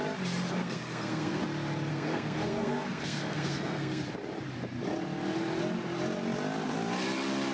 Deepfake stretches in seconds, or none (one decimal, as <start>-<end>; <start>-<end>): 0.6-1.4; 1.9-4.0